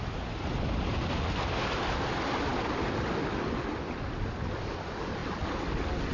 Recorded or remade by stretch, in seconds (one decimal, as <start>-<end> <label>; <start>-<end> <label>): 0.0-6.1 recorded